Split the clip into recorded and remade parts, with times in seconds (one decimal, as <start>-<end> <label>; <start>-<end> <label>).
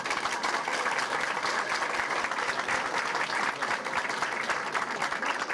0.0-5.5 recorded